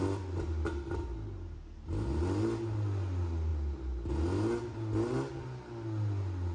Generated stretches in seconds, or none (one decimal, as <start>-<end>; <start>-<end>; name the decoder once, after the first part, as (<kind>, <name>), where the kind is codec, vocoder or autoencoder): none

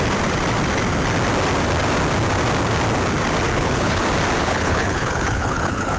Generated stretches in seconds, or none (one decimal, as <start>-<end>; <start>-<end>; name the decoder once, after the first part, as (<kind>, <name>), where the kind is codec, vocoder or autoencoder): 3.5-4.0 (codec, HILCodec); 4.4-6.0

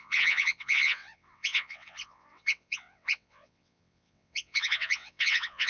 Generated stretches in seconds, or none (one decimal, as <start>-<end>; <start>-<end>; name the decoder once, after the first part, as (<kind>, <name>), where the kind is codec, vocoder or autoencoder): 0.0-5.7 (vocoder, WaveNeXt)

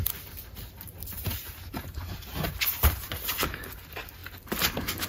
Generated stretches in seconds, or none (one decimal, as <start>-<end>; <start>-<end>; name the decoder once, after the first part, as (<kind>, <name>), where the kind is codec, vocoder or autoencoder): 1.1-3.6 (vocoder, BigVGAN v2)

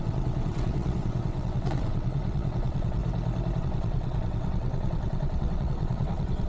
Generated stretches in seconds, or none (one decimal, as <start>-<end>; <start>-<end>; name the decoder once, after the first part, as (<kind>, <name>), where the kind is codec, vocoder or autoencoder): 0.0-3.0 (vocoder, WaveNeXt); 3.6-6.5

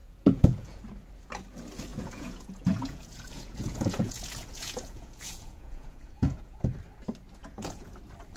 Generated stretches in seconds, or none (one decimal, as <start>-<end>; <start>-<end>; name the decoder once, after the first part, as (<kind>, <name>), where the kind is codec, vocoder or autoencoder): 0.0-0.8 (vocoder, Vocos); 1.9-6.6; 7.4-7.9

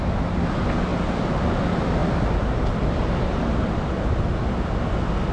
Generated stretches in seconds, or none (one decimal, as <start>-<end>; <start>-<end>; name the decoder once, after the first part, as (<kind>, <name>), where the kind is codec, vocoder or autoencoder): none

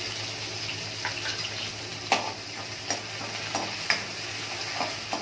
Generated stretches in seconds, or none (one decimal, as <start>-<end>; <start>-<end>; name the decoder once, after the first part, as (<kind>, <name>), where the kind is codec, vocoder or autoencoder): none